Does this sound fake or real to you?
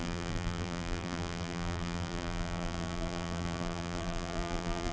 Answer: fake